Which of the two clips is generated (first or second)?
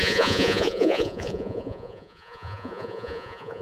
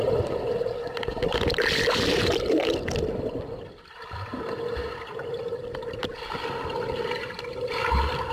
first